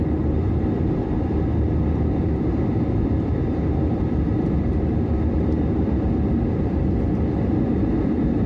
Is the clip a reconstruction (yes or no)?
yes